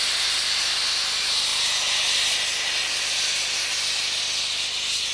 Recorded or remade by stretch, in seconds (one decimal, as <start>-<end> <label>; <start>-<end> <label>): 0.0-5.1 recorded